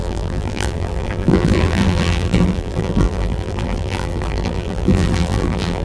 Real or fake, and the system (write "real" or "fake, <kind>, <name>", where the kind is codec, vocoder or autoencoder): fake, vocoder, BigVGAN v2